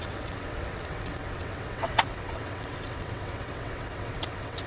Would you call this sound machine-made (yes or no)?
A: yes